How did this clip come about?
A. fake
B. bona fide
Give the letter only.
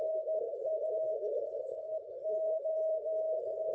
A